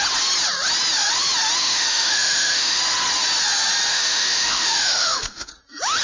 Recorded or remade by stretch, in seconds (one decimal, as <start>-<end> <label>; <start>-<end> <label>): 0.0-1.6 recorded; 1.6-2.8 remade; 2.8-3.9 recorded; 3.9-5.5 remade; 5.5-6.0 recorded